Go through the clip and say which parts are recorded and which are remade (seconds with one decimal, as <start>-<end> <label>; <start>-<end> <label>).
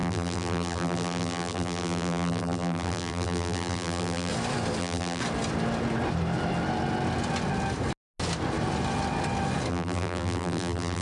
0.0-4.3 remade; 4.3-4.8 recorded; 4.8-5.2 remade; 5.2-9.7 recorded; 9.7-11.0 remade